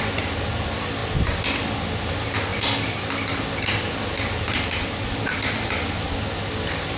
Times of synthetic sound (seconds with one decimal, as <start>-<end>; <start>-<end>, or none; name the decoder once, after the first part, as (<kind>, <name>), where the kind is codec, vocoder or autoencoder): none